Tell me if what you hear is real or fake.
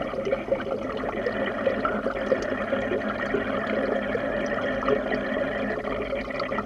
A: real